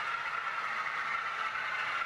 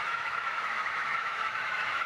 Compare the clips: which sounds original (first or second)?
first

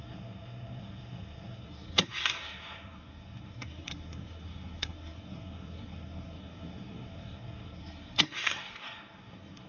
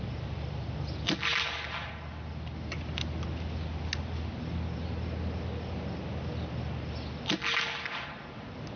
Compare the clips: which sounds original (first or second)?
second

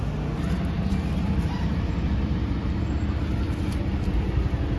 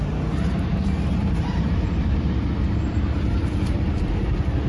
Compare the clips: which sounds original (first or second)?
first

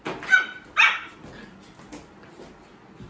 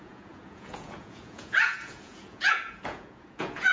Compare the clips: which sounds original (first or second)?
first